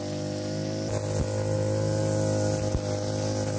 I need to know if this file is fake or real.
real